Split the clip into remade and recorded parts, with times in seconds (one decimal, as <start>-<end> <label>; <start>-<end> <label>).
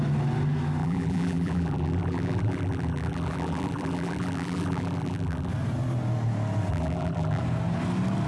0.0-0.8 recorded; 0.8-5.5 remade; 5.5-6.7 recorded; 6.7-7.4 remade; 7.4-8.3 recorded